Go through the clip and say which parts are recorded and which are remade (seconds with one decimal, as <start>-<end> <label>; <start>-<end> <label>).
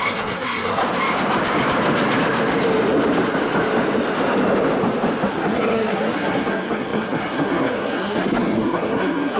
0.0-0.8 remade; 0.8-5.3 recorded; 5.3-9.4 remade